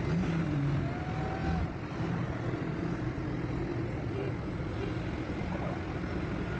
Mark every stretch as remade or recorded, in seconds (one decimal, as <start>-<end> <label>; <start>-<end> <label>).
0.0-6.6 recorded